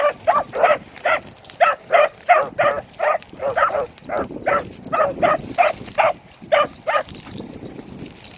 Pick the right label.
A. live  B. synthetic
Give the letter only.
A